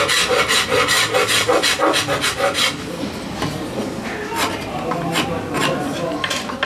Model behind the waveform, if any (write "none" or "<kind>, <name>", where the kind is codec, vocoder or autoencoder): none